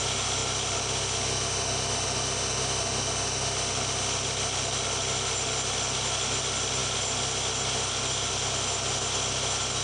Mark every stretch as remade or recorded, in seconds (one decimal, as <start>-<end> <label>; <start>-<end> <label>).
0.0-9.8 recorded